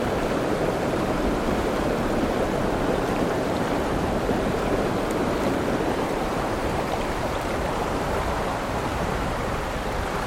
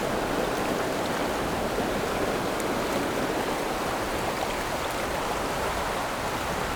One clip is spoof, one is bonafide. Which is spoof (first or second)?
first